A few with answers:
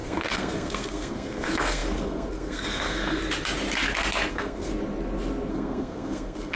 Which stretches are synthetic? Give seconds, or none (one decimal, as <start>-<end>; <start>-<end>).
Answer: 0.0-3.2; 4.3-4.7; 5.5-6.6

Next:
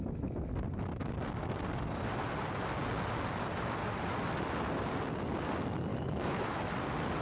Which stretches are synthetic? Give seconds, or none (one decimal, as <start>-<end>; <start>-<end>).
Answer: 5.9-6.7

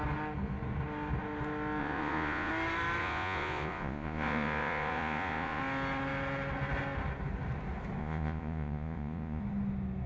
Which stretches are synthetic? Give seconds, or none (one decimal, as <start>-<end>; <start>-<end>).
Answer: 1.8-2.5; 3.0-5.6; 8.0-9.4

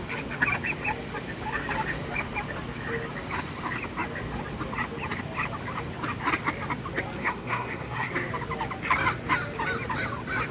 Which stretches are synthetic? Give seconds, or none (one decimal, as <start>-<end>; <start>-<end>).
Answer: 7.2-8.1

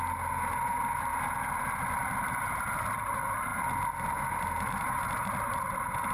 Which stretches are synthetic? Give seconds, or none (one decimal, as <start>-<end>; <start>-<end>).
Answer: none

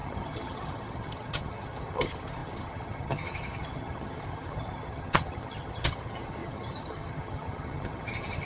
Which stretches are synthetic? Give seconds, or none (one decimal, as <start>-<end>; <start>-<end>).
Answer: 0.0-8.5

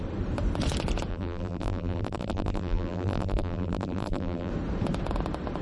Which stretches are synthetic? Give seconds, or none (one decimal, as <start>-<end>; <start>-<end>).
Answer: 1.1-4.5